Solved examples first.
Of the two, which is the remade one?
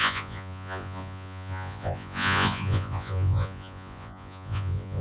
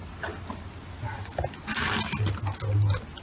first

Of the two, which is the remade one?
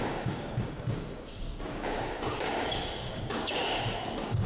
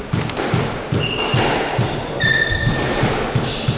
first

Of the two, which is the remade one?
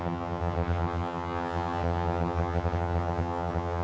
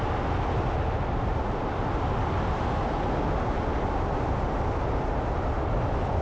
first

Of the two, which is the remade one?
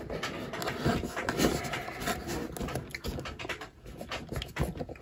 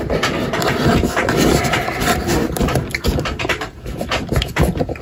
second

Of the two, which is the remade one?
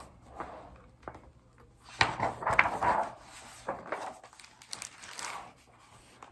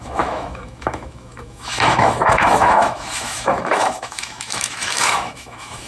second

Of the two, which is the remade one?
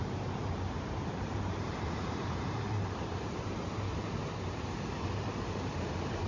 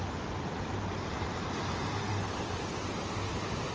first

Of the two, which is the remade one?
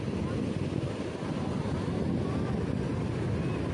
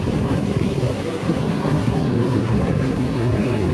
second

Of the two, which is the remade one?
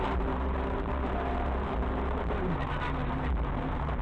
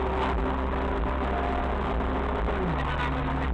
first